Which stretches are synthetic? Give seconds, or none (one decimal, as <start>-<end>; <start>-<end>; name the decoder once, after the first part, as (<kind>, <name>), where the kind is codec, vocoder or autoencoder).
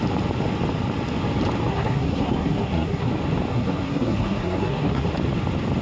1.7-3.1 (codec, SNAC); 3.5-5.1